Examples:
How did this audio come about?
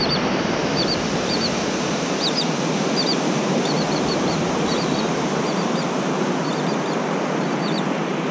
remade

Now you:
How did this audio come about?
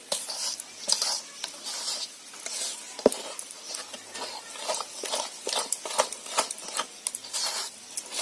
recorded